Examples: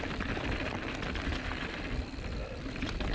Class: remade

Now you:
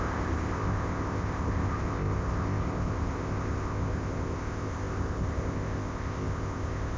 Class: remade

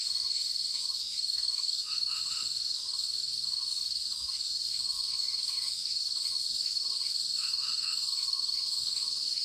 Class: remade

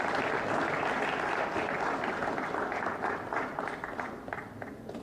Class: recorded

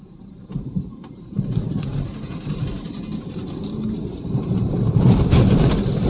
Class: remade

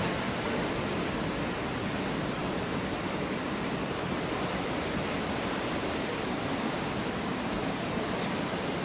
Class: recorded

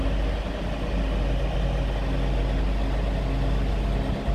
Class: recorded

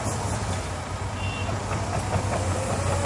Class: recorded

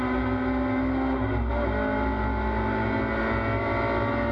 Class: recorded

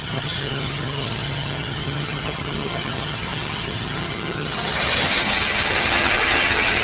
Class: remade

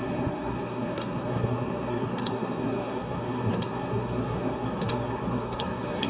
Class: remade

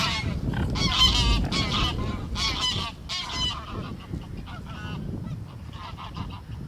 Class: recorded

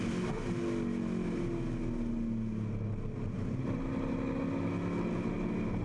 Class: recorded